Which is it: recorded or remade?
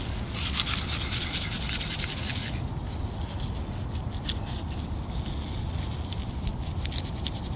recorded